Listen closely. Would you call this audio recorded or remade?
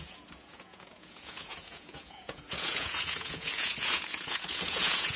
remade